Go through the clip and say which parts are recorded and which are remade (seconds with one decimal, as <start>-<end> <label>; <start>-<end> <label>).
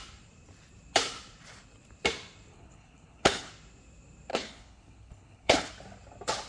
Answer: 0.0-2.5 recorded; 2.5-3.5 remade; 3.5-4.3 recorded; 4.3-5.7 remade; 5.7-6.5 recorded